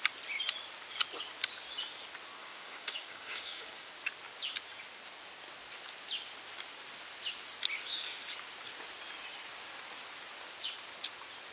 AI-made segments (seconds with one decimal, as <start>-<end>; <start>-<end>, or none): 2.4-3.9